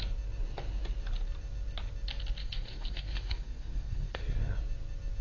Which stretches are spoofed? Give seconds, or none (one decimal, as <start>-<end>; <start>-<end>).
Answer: 2.4-4.2